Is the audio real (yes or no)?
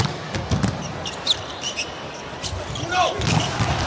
yes